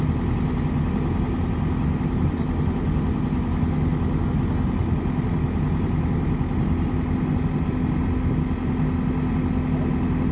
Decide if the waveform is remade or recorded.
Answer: recorded